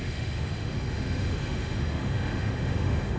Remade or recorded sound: remade